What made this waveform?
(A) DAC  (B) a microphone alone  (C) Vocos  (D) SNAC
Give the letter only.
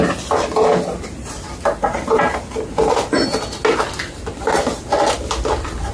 B